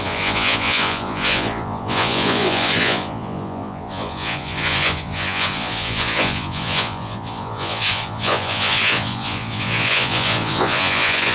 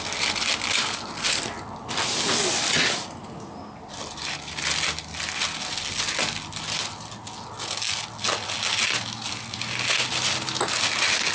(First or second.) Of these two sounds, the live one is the second